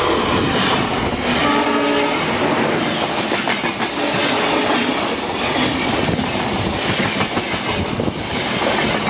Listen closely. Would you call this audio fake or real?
real